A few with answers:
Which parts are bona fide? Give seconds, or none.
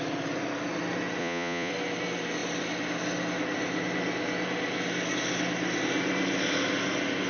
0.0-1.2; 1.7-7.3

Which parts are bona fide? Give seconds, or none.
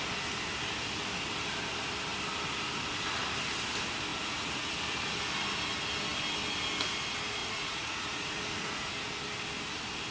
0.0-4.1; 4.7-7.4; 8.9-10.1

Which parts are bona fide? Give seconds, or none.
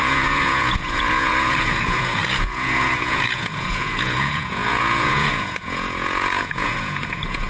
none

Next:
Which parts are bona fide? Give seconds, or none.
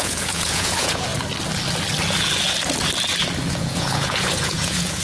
1.1-3.5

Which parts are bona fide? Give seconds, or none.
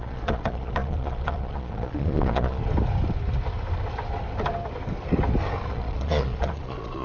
2.6-5.7